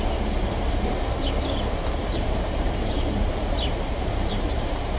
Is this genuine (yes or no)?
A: no